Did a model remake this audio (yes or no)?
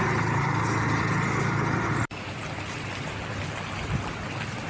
no